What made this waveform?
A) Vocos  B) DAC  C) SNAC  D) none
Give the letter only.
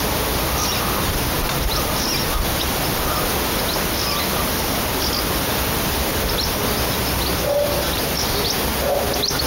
D